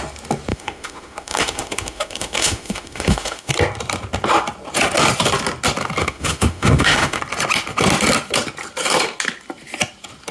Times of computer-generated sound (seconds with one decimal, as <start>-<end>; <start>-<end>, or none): 0.5-3.5; 6.0-7.2